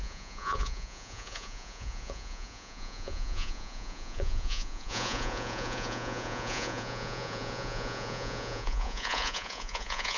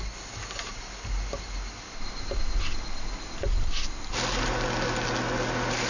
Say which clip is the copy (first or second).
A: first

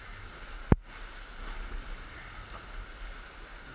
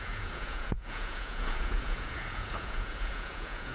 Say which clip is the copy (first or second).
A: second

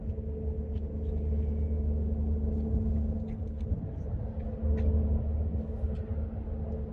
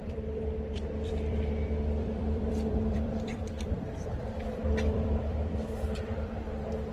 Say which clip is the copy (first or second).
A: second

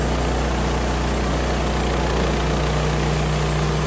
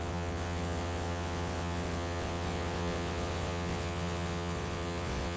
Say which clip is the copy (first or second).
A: second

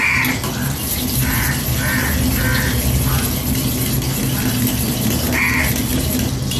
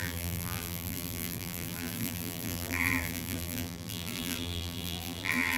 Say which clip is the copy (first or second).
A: second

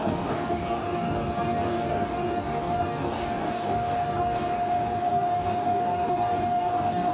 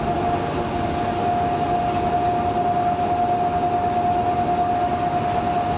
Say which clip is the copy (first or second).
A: first